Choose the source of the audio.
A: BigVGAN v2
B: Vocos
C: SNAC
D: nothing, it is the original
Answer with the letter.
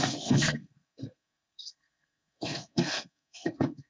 C